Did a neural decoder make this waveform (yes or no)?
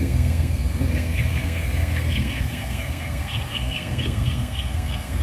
yes